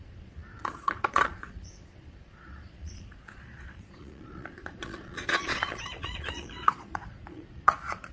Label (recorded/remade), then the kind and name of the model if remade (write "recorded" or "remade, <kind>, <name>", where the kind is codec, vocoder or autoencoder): remade, vocoder, Vocos